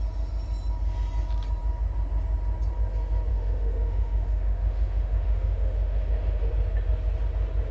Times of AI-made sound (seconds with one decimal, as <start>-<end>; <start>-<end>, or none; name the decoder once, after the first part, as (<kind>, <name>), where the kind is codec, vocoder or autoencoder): 3.3-6.5 (autoencoder, DAC-VAE)